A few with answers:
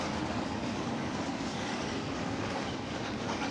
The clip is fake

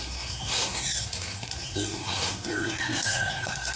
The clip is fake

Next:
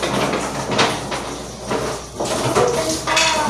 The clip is real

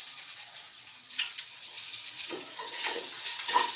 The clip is fake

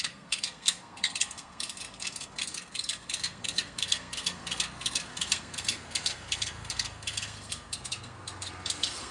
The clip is fake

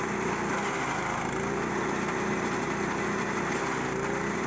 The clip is real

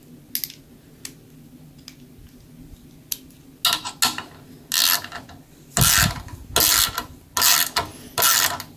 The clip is real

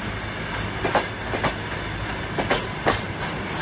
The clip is real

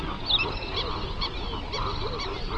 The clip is real